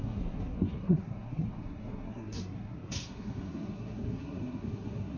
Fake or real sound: fake